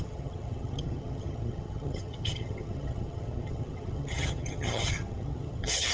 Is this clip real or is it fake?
fake